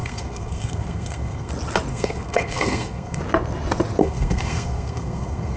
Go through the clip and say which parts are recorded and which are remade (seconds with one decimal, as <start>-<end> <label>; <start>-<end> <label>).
0.0-1.5 remade; 1.5-1.9 recorded; 1.9-3.2 remade; 3.2-4.0 recorded; 4.0-5.6 remade